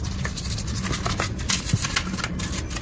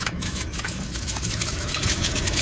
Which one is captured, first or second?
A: first